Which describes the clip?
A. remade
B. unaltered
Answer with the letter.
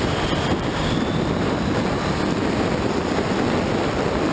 A